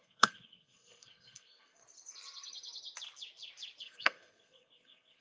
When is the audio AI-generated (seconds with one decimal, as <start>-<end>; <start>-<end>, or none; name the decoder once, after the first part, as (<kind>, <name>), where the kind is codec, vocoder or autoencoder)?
0.0-1.8 (codec, SNAC); 3.8-5.2

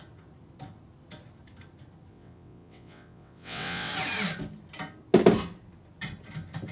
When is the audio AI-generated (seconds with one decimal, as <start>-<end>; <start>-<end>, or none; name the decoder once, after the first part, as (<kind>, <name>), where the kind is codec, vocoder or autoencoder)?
2.1-3.9 (vocoder, WaveNeXt)

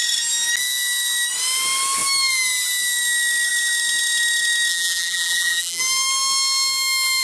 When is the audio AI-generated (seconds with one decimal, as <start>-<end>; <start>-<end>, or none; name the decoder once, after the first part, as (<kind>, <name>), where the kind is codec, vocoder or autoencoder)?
4.7-5.8 (vocoder, BigVGAN v2)

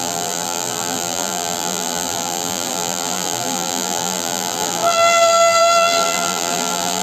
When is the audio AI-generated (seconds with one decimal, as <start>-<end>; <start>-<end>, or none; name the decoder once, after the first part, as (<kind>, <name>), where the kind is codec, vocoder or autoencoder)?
0.0-7.0 (vocoder, BigVGAN v2)

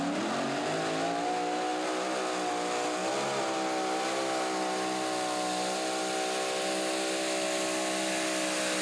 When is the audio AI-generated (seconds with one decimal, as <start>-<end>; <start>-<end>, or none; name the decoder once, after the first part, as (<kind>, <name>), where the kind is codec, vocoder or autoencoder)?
none

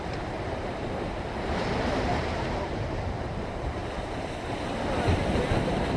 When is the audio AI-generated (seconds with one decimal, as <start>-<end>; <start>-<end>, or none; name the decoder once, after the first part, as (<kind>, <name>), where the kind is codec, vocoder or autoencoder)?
0.0-3.8 (vocoder, BigVGAN v2); 5.6-6.0